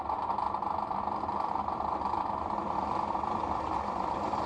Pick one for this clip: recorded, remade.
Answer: remade